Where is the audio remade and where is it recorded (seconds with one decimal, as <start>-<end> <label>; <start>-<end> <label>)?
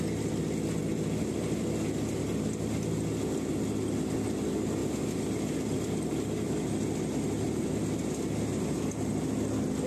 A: 0.0-9.9 recorded